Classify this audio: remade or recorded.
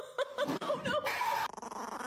remade